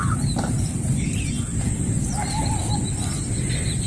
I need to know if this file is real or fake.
real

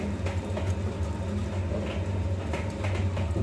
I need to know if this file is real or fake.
real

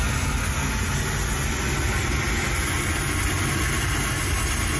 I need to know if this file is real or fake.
real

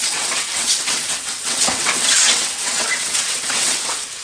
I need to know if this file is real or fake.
fake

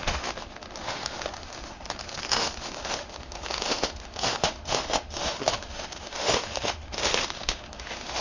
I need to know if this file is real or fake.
fake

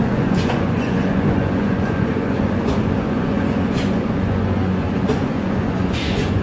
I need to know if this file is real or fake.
fake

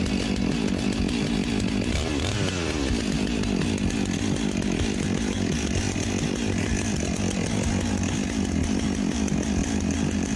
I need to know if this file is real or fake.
real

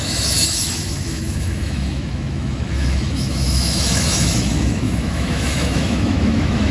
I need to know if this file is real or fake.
fake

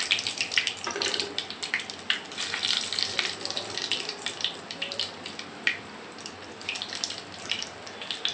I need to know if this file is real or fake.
fake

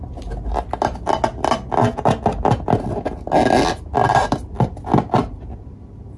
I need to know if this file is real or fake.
real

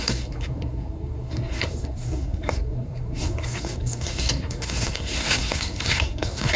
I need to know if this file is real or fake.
fake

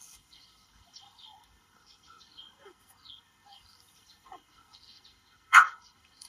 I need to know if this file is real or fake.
fake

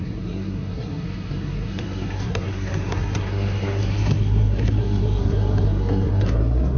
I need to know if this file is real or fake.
fake